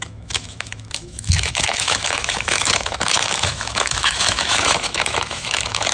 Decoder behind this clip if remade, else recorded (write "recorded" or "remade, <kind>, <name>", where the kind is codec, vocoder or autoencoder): remade, autoencoder, DAC-VAE